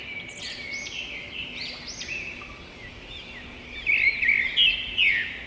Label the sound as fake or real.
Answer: real